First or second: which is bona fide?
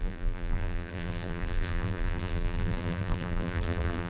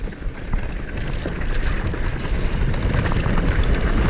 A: second